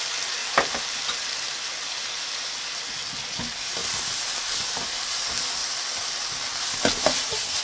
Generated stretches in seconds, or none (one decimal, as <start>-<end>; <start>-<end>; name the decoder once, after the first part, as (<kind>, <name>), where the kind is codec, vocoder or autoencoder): 0.4-2.8 (vocoder, BigVGAN v2)